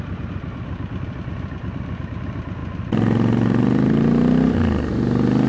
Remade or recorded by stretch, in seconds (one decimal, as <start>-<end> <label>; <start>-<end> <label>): 0.0-5.5 recorded